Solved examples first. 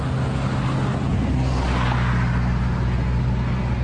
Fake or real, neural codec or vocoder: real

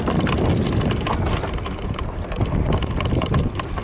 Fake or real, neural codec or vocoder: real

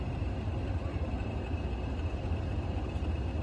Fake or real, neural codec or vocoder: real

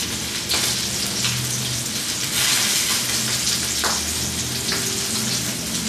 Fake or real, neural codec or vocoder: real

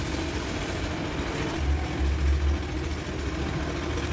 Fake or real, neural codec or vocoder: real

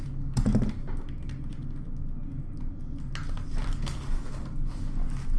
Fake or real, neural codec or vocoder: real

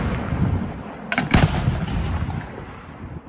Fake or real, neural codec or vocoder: real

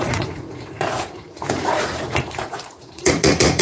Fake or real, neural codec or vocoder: fake, vocoder, Vocos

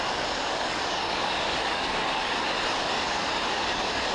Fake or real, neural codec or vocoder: fake, codec, DAC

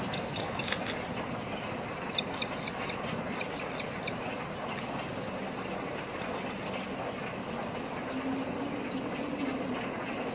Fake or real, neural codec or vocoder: real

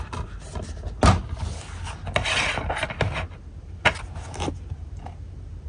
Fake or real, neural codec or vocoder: real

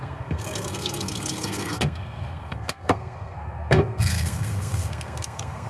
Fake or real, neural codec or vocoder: fake, codec, SNAC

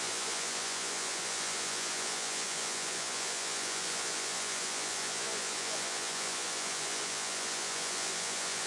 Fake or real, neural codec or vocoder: fake, vocoder, Vocos